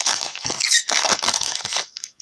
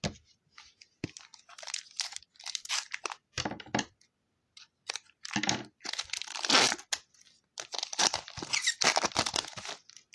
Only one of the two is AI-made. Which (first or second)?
first